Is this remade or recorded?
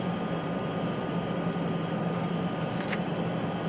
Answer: remade